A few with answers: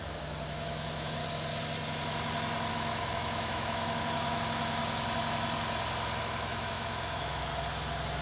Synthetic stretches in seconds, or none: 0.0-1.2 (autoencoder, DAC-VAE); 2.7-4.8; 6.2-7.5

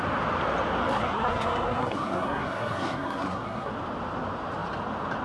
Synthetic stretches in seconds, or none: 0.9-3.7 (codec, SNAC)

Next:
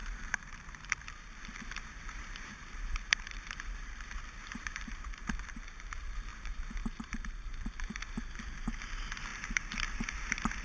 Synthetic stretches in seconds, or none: 0.0-10.6 (vocoder, BigVGAN v2)

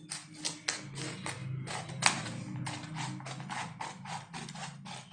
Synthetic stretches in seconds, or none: none

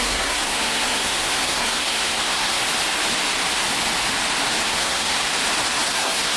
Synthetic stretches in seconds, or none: 0.0-2.6 (codec, SNAC); 4.6-5.3; 5.9-6.4

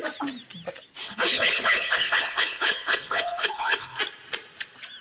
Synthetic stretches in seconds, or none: 1.0-4.0 (codec, HILCodec)

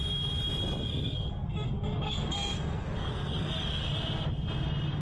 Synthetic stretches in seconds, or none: 0.9-3.9 (codec, SNAC)

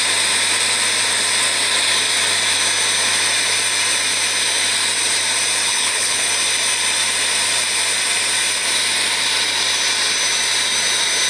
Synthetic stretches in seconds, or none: 5.7-6.3 (codec, HILCodec)